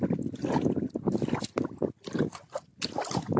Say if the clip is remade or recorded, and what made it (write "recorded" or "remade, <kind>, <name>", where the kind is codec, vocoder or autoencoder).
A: recorded